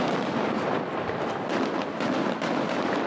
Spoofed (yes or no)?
no